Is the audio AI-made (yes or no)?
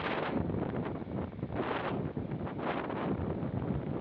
no